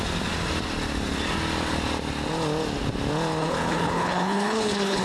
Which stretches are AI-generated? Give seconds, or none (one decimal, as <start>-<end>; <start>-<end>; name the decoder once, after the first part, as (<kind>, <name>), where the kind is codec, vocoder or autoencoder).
3.4-5.0 (codec, HILCodec)